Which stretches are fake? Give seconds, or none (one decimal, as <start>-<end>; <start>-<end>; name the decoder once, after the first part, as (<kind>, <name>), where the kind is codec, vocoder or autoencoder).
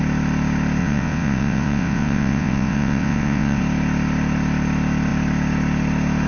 0.8-3.6 (vocoder, WaveNeXt)